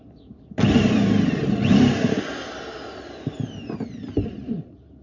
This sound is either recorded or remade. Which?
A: recorded